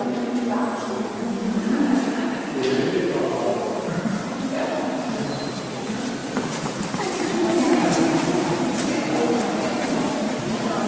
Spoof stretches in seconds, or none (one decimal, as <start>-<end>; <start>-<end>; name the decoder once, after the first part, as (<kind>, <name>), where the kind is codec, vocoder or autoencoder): 3.5-4.4 (vocoder, BigVGAN v2); 6.2-10.9